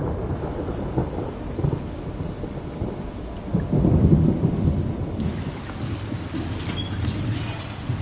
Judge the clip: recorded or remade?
recorded